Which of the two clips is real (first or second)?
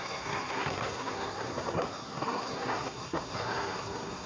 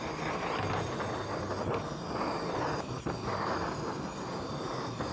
second